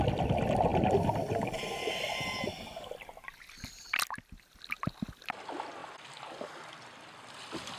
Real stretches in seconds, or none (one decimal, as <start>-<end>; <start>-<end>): 0.0-7.8

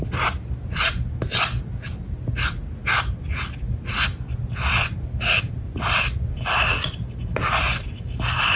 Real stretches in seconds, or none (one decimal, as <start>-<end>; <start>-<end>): 0.0-8.6

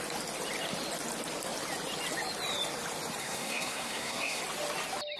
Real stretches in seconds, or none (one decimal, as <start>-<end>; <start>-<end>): 0.0-3.2; 4.4-5.2

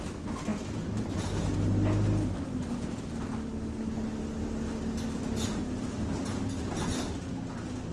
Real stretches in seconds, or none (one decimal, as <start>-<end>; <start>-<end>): 0.0-7.9

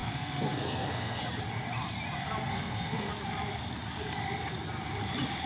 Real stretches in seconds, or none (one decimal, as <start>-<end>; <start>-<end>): 1.2-2.5; 3.1-5.5